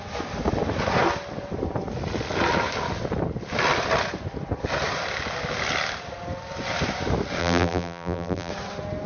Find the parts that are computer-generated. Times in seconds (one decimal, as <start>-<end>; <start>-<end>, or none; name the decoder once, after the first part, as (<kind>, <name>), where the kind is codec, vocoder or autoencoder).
7.4-8.5 (vocoder, BigVGAN v2)